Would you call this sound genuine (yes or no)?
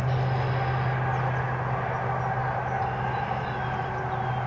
yes